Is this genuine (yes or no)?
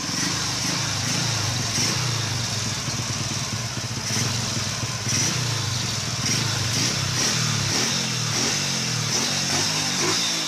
yes